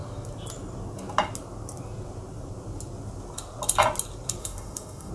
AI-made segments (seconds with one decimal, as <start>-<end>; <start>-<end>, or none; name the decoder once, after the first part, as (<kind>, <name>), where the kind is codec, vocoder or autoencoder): 4.4-5.1 (autoencoder, DAC-VAE)